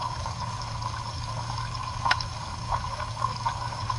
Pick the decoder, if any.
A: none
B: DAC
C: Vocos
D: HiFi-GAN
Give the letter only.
B